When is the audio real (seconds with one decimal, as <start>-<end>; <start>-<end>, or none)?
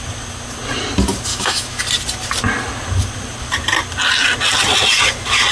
0.0-1.3; 1.8-5.5